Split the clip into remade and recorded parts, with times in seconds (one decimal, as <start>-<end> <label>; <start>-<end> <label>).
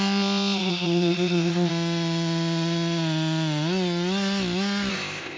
0.0-1.7 remade; 1.7-4.9 recorded; 4.9-5.4 remade